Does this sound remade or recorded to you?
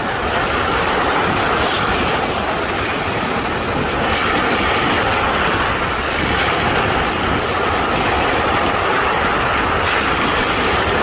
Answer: recorded